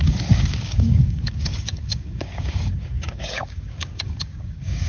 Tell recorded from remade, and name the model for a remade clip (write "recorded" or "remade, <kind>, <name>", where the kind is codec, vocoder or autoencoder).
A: remade, codec, DAC